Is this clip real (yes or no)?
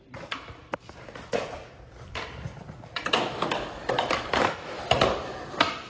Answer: no